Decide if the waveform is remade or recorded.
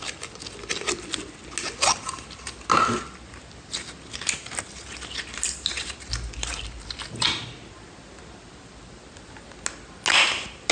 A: recorded